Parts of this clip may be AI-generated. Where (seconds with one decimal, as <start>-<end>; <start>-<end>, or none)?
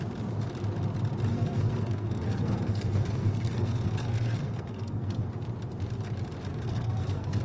1.3-5.3; 6.5-7.4